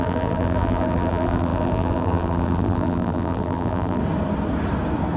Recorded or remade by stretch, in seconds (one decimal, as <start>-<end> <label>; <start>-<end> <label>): 0.0-4.0 remade; 4.0-5.2 recorded